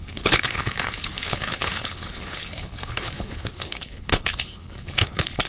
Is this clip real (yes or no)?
no